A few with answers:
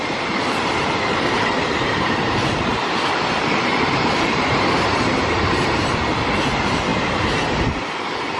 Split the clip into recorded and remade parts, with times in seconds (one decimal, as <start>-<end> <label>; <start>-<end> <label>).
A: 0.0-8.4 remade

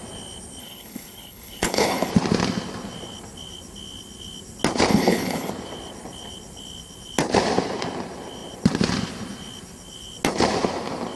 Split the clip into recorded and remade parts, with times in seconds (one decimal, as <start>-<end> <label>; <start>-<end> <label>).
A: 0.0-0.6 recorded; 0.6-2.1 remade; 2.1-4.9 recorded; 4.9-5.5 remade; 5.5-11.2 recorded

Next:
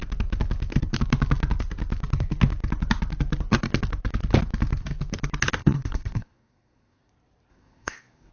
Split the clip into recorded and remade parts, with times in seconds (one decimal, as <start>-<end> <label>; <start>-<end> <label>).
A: 0.0-5.6 recorded; 5.6-7.1 remade; 7.1-7.5 recorded; 7.5-8.3 remade